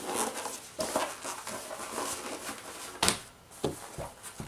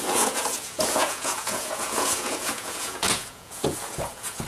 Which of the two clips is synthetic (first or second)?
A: second